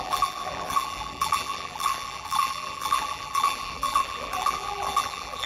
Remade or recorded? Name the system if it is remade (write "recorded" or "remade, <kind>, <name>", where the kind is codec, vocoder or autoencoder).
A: remade, vocoder, BigVGAN v2